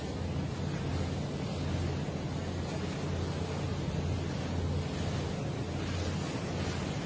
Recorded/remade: recorded